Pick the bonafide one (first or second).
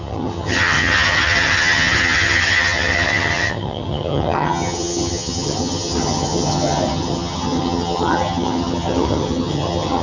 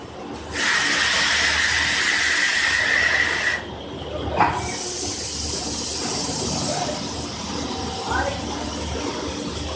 second